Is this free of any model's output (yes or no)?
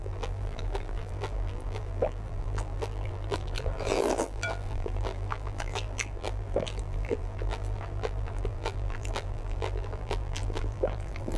no